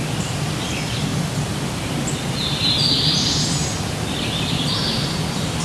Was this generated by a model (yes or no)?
no